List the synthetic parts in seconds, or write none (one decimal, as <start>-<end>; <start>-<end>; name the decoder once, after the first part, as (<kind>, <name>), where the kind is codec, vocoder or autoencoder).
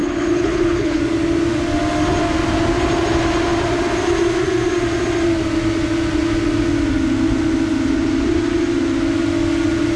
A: 0.0-1.0 (codec, HILCodec)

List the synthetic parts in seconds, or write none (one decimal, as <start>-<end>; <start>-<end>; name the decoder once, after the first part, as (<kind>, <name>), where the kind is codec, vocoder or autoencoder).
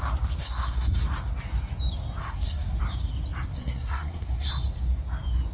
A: 0.4-1.0 (codec, SNAC); 2.2-2.8; 3.5-4.5